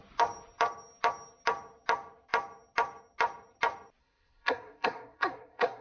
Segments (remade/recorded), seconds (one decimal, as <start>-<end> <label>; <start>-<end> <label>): 0.0-4.0 recorded; 4.0-5.8 remade